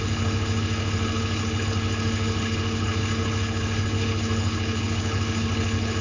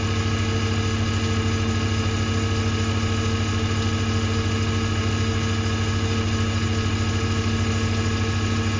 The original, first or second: second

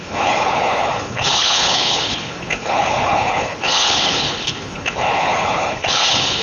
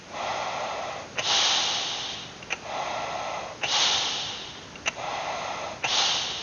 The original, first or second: second